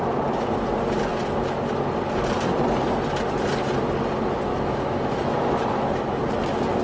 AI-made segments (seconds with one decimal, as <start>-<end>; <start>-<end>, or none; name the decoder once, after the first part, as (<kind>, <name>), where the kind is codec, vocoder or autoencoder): 4.5-6.2 (autoencoder, DAC-VAE)